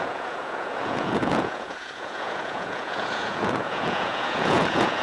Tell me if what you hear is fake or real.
fake